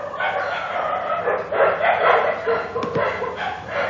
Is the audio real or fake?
real